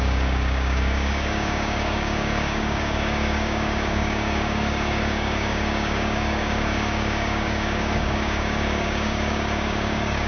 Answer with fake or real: fake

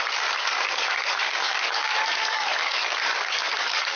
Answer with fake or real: fake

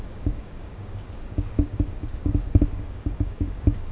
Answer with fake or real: fake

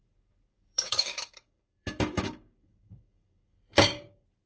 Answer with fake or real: fake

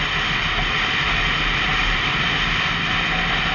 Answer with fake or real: real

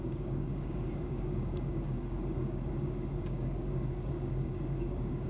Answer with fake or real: fake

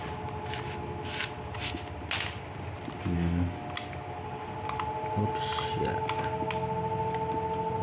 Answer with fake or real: real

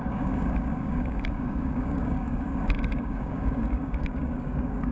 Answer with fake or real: fake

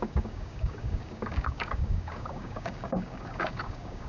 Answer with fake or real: fake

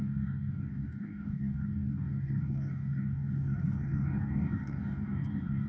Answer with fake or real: fake